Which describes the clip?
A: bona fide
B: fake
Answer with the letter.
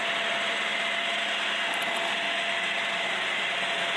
A